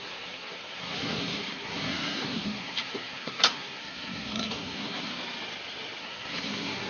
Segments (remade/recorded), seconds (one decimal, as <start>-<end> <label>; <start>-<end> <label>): 0.0-5.1 remade; 5.1-6.0 recorded; 6.0-6.9 remade